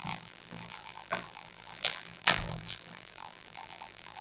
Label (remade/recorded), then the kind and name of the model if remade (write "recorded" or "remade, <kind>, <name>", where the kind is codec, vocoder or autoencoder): remade, vocoder, BigVGAN v2